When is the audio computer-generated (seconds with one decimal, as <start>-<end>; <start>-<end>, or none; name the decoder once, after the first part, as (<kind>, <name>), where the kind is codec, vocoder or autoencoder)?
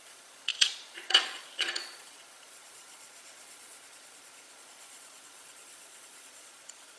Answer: 0.0-7.0 (vocoder, Vocos)